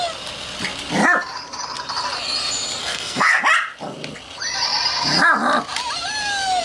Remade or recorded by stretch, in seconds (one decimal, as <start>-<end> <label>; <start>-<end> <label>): 0.0-2.8 recorded; 2.8-3.4 remade; 3.4-6.6 recorded